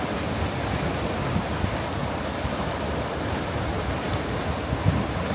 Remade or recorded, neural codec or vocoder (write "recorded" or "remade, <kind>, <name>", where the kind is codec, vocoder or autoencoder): recorded